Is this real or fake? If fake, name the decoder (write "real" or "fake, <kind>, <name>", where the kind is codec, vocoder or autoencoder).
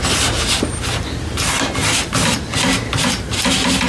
real